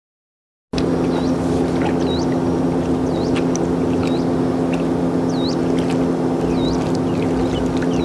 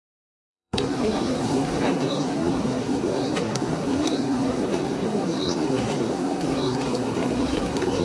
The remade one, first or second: second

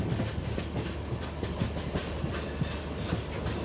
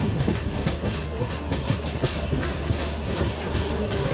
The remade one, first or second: second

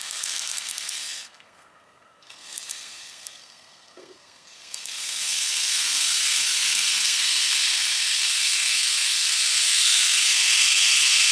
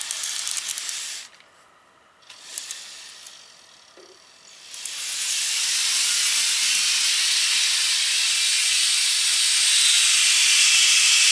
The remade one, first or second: first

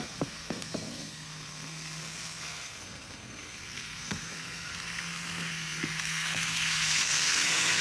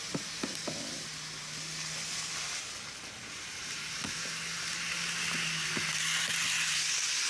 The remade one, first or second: first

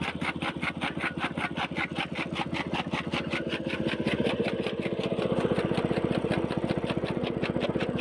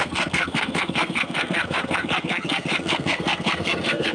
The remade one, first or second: second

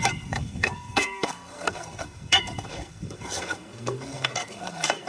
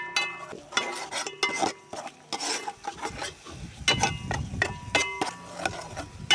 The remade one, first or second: first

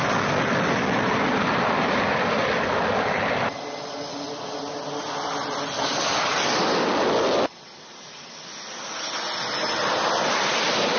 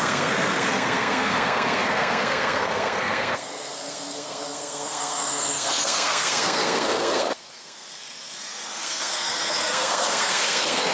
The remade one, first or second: second